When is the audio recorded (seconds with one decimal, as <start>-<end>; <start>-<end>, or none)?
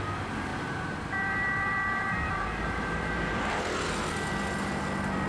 0.0-0.5; 3.6-5.3